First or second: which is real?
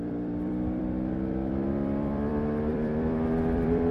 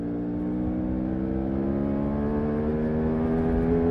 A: second